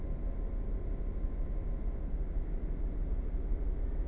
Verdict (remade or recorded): recorded